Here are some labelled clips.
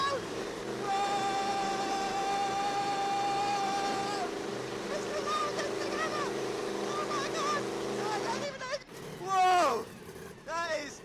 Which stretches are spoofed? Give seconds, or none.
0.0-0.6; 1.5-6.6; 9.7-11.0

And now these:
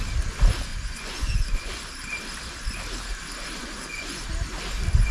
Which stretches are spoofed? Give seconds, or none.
0.7-1.7; 3.6-4.2